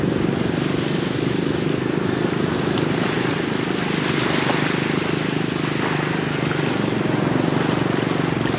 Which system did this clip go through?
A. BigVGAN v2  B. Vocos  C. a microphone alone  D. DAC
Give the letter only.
C